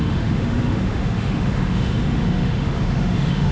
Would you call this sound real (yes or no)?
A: no